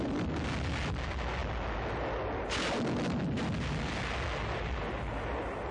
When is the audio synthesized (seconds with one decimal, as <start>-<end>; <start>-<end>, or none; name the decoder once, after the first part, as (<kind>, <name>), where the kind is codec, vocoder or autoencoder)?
none